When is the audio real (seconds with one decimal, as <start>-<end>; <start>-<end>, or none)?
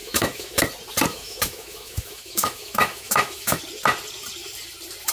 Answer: 0.6-1.1; 3.6-5.1